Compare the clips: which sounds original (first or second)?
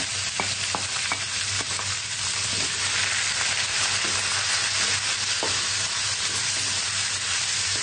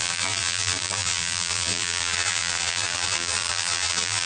first